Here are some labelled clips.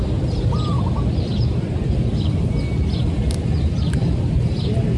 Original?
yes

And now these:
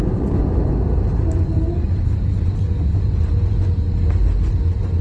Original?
yes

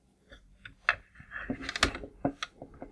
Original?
yes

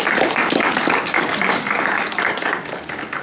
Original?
no